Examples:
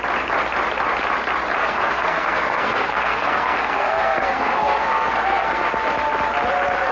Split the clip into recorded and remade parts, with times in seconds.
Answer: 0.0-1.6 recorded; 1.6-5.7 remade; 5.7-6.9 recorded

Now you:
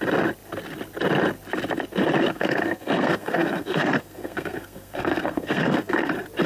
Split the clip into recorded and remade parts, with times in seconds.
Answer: 0.0-2.2 recorded; 2.2-6.1 remade; 6.1-6.5 recorded

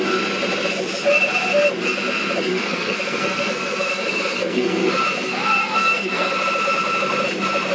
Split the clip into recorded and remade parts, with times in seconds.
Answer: 0.0-2.5 recorded; 2.5-4.9 remade; 4.9-5.6 recorded; 5.6-6.3 remade; 6.3-7.7 recorded